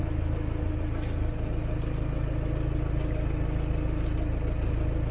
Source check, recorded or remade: recorded